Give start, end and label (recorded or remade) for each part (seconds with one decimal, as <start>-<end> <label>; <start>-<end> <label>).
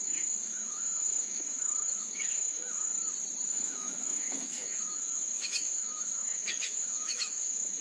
0.0-2.9 remade; 2.9-3.5 recorded; 3.5-7.8 remade